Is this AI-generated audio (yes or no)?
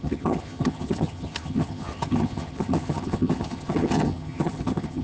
yes